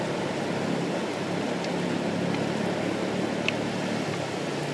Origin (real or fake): real